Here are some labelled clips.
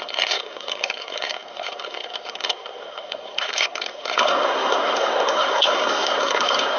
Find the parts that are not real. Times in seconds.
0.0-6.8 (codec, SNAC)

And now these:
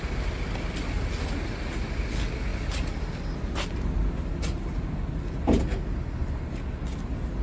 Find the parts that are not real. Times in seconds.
6.2-6.7 (vocoder, BigVGAN v2)

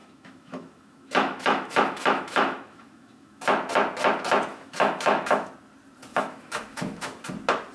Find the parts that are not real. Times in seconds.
0.0-3.4 (autoencoder, DAC-VAE); 4.5-5.5; 6.1-7.2

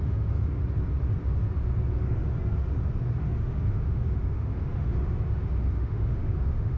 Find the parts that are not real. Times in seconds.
0.0-0.6 (autoencoder, DAC-VAE); 1.9-2.3; 3.2-6.8

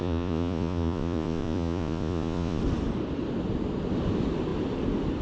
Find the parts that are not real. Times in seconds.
0.0-2.6 (vocoder, Vocos)

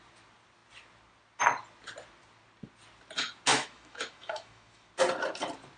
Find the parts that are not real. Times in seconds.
3.5-4.9 (autoencoder, DAC-VAE)

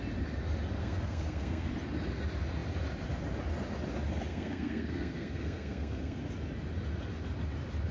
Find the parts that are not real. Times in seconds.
0.8-1.7 (codec, SNAC); 4.3-6.2

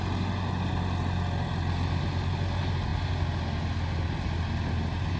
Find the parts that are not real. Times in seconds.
none